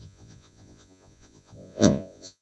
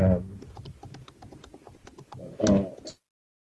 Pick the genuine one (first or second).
second